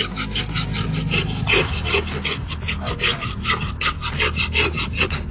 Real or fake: real